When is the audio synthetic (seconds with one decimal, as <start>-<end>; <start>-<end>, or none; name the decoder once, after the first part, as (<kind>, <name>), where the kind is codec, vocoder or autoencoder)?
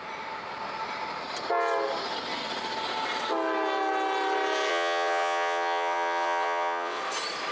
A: 4.7-7.0 (vocoder, WaveNeXt)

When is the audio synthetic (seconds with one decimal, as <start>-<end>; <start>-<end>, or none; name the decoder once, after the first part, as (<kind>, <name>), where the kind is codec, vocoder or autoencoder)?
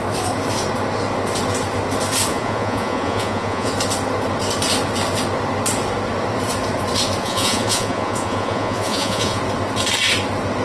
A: 2.3-3.7 (vocoder, Vocos); 7.2-9.4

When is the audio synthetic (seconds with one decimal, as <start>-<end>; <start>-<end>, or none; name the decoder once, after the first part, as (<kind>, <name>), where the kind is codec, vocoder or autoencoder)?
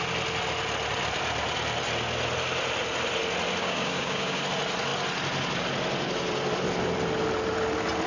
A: 3.6-4.4 (codec, DAC)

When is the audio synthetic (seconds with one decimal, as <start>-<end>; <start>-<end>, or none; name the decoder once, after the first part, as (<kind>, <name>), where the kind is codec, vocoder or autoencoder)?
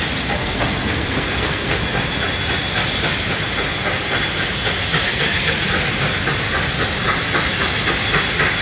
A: 0.4-1.8 (codec, SNAC); 5.1-5.7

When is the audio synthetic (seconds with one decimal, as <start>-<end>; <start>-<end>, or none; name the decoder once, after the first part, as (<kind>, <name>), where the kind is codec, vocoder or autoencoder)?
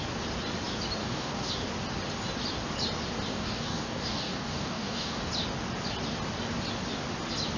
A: 1.0-1.5 (codec, DAC); 3.3-5.3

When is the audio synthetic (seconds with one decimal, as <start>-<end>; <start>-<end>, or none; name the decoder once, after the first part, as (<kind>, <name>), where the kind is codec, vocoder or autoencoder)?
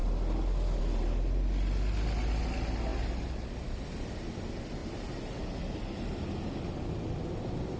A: none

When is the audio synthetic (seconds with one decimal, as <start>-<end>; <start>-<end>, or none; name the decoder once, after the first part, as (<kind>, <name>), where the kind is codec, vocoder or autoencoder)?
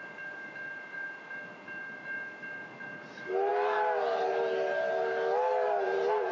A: none